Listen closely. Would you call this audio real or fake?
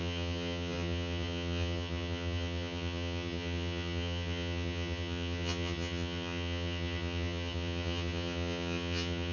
fake